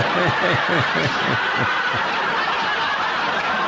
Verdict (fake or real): real